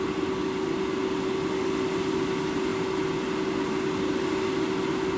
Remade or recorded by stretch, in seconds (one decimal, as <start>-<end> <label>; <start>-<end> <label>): 0.0-5.2 recorded